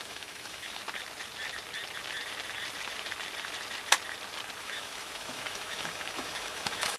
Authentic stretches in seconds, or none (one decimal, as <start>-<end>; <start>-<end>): 0.8-4.6